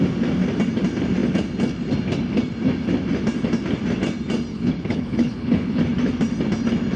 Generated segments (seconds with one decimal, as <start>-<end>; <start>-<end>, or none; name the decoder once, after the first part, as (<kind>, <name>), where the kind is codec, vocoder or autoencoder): 4.5-5.8 (codec, HILCodec)